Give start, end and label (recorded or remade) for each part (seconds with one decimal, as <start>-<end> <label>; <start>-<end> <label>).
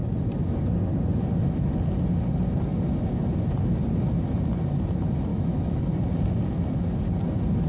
0.0-5.3 recorded; 5.3-5.9 remade; 5.9-7.7 recorded